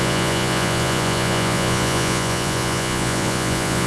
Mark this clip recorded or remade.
remade